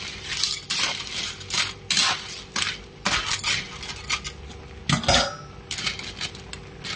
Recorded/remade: recorded